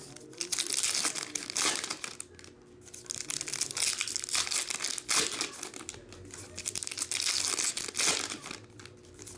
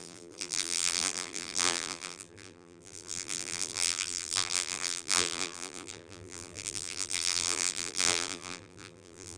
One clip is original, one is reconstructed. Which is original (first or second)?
first